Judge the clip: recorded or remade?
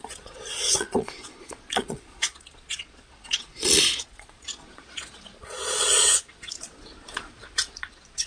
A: remade